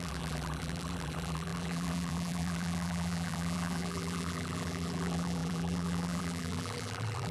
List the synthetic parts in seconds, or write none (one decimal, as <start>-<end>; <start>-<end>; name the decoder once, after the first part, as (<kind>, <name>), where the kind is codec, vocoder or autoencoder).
0.0-7.3 (vocoder, BigVGAN v2)